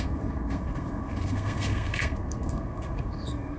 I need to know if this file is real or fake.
fake